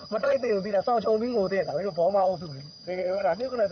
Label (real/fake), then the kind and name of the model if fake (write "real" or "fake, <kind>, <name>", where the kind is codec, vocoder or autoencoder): fake, vocoder, HiFi-GAN